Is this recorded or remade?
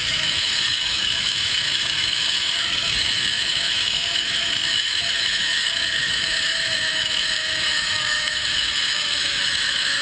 remade